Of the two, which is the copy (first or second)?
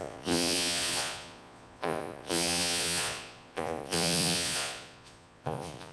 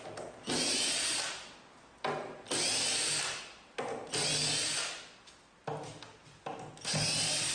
first